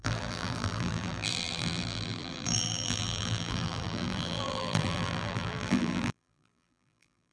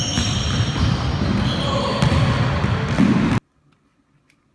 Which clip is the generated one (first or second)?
first